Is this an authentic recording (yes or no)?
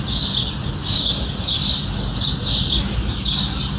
yes